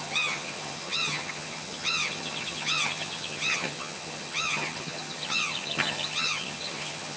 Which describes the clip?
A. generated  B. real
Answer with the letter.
A